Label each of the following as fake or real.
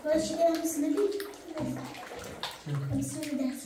real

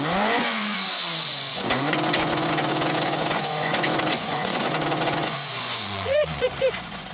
fake